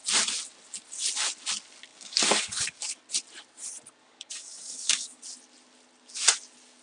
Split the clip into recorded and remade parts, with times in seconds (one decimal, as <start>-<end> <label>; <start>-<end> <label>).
0.0-1.9 recorded; 1.9-2.8 remade; 2.8-4.0 recorded; 4.0-5.2 remade; 5.2-6.8 recorded